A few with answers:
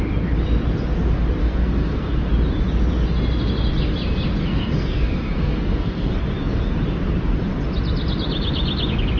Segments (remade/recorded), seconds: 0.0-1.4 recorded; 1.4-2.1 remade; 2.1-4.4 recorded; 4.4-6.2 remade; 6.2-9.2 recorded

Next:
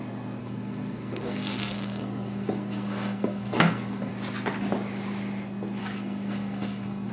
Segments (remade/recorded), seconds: 0.0-0.4 recorded; 0.4-4.1 remade; 4.1-5.8 recorded; 5.8-7.1 remade